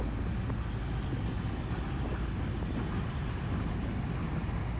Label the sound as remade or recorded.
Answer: recorded